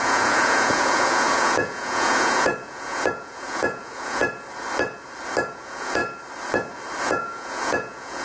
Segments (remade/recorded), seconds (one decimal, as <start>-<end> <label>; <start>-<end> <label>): 0.0-4.2 remade; 4.2-5.5 recorded; 5.5-6.0 remade; 6.0-7.0 recorded; 7.0-8.2 remade